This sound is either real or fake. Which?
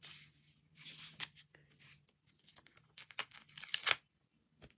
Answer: real